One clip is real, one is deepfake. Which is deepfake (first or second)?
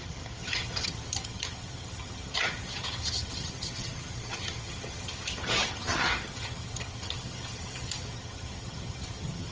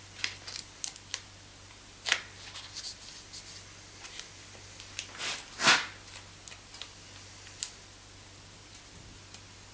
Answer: first